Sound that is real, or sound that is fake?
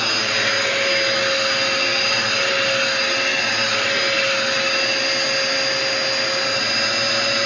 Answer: real